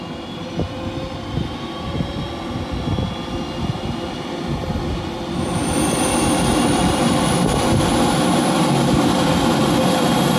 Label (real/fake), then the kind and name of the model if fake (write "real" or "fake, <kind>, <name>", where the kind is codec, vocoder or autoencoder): real